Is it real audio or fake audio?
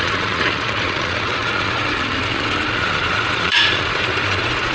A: fake